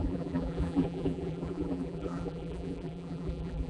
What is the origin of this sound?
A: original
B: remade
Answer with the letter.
B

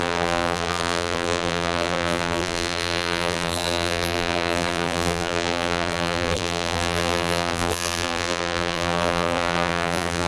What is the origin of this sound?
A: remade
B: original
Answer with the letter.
A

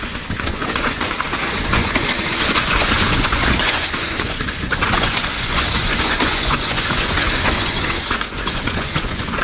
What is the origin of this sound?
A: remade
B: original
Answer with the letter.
A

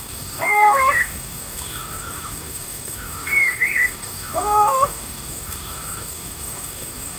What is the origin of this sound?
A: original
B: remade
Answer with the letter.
B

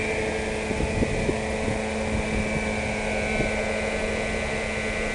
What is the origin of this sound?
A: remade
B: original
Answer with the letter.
B